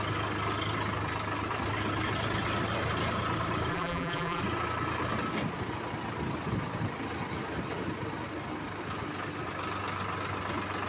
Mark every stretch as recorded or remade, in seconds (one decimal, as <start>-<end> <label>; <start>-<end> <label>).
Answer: 0.0-3.7 recorded; 3.7-4.4 remade; 4.4-10.9 recorded